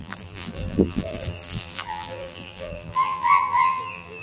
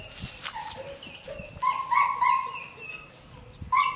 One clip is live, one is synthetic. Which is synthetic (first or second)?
first